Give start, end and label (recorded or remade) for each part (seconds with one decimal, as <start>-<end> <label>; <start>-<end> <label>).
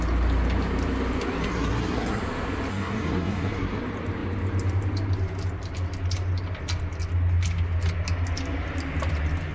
0.0-1.5 recorded; 1.5-2.2 remade; 2.2-2.7 recorded; 2.7-3.8 remade; 3.8-9.5 recorded